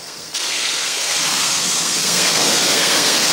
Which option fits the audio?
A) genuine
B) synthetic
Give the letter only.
B